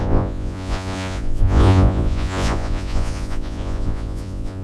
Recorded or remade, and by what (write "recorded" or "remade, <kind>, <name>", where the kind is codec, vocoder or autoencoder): remade, vocoder, Vocos